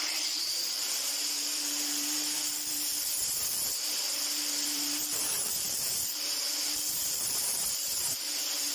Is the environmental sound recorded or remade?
remade